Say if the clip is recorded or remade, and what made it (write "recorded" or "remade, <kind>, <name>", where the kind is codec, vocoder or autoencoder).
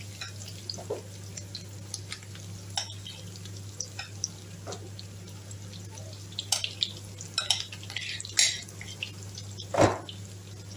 recorded